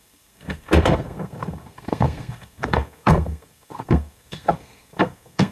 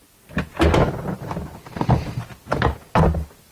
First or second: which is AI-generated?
first